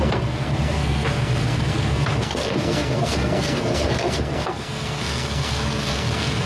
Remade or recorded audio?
remade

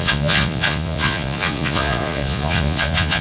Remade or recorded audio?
remade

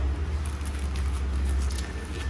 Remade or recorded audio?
recorded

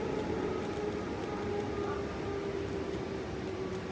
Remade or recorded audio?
recorded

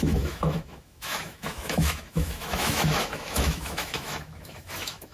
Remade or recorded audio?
remade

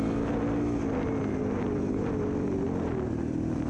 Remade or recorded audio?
recorded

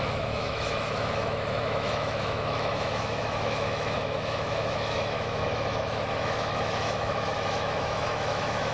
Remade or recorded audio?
remade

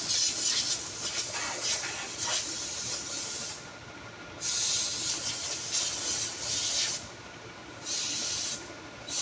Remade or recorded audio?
recorded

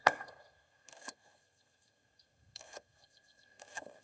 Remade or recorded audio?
remade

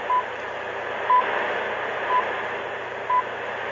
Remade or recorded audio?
recorded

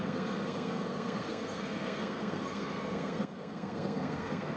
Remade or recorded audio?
remade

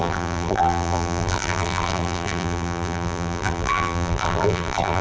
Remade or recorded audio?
remade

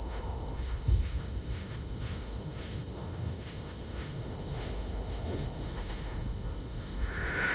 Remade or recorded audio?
remade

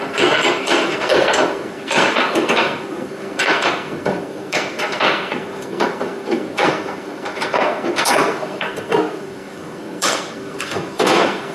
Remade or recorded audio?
remade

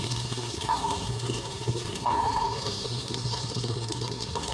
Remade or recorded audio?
remade